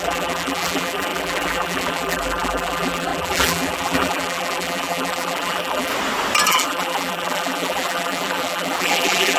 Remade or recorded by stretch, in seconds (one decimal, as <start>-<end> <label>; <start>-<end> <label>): 0.0-5.9 remade; 5.9-6.5 recorded; 6.5-9.4 remade